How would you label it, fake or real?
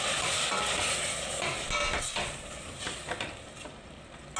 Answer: real